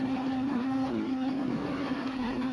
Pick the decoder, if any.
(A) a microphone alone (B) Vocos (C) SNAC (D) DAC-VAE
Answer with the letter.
C